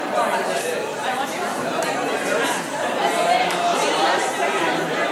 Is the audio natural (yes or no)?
no